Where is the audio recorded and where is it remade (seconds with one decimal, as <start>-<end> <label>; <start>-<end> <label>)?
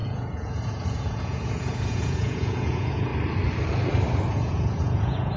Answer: 0.0-3.1 remade; 3.1-4.3 recorded; 4.3-5.4 remade